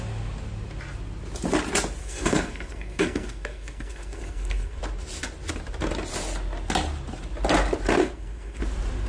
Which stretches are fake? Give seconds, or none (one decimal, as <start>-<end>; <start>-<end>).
2.0-4.8; 8.0-8.6